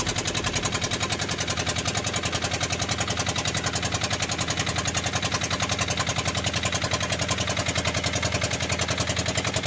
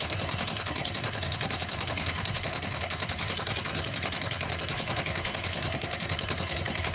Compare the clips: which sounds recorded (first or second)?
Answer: first